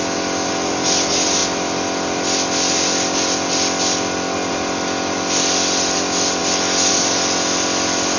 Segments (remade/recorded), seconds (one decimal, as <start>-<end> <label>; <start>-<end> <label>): 0.0-8.2 recorded